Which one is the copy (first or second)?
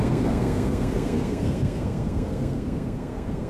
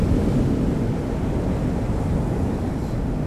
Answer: first